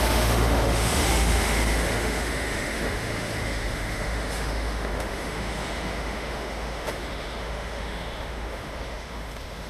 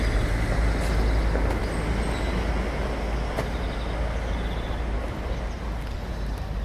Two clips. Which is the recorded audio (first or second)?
second